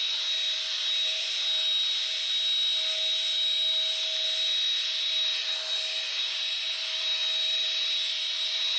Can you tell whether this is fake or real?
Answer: real